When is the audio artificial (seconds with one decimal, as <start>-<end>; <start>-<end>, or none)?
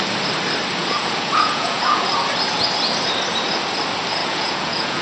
0.8-2.1; 4.2-5.0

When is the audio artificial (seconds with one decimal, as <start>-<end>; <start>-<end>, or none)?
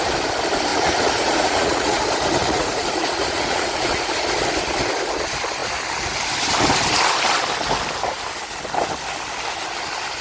0.7-2.0; 2.4-4.1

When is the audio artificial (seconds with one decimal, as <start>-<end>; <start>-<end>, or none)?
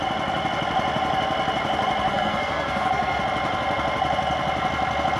2.1-3.2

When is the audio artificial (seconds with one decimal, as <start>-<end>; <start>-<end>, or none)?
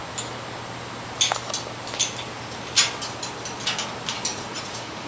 4.3-5.1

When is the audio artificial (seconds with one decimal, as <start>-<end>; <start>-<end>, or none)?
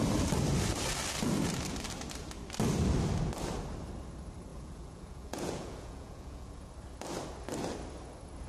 4.5-6.7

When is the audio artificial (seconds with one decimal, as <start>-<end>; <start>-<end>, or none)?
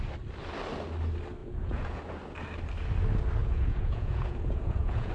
1.4-2.0; 3.4-5.1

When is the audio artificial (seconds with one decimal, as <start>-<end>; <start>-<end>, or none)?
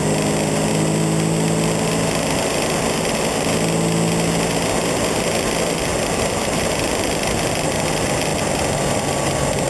none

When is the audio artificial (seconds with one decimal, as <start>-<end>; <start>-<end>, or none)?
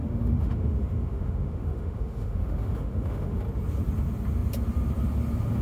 0.0-3.4